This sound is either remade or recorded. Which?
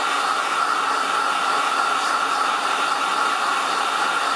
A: recorded